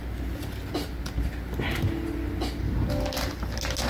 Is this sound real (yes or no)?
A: yes